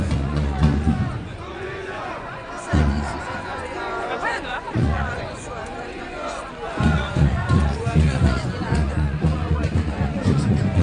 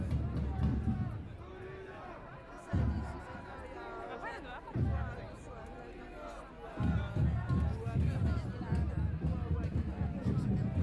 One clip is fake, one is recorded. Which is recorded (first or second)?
second